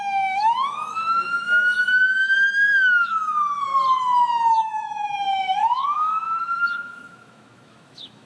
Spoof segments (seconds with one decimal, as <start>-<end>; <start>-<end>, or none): 0.0-3.7; 4.5-8.3